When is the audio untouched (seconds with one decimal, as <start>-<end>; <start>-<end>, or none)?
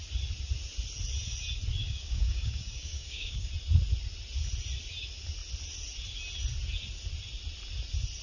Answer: 0.0-1.8; 3.5-8.2